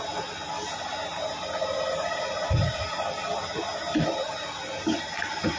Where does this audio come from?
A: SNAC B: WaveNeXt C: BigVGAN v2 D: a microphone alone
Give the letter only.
D